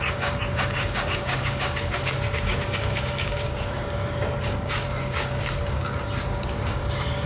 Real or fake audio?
fake